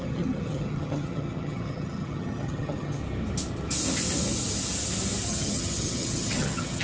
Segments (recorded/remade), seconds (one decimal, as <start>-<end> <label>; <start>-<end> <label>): 0.0-3.0 remade; 3.0-5.3 recorded; 5.3-6.8 remade